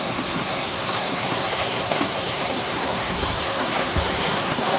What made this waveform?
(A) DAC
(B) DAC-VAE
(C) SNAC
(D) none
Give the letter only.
C